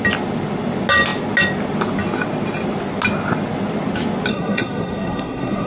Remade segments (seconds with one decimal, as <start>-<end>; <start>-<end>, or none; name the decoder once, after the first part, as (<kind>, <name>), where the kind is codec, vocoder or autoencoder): 4.3-5.7 (codec, SNAC)